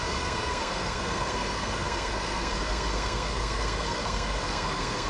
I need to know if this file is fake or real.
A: fake